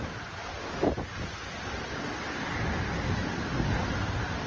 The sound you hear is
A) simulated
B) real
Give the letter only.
B